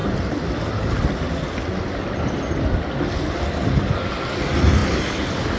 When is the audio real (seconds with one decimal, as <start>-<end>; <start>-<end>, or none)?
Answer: 0.0-5.6